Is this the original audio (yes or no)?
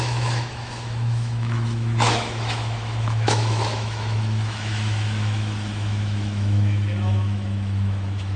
no